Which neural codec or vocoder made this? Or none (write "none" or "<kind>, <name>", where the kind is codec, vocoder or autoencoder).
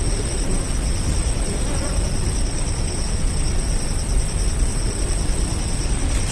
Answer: none